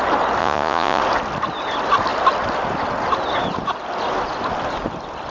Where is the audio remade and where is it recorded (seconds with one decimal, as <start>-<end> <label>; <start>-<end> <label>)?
0.0-0.4 recorded; 0.4-1.0 remade; 1.0-5.3 recorded